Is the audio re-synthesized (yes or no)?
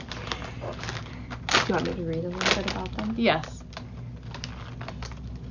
no